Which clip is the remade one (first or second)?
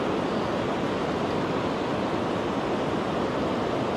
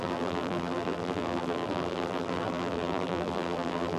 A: second